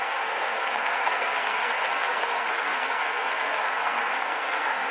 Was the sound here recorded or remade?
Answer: remade